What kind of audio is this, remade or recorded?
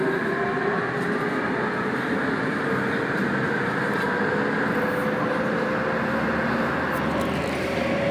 recorded